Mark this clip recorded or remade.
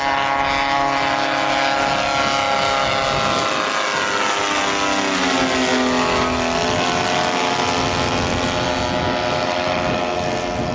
recorded